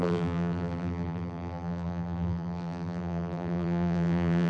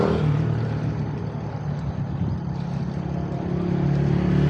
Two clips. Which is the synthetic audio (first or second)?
first